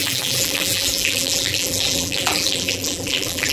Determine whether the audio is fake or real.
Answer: fake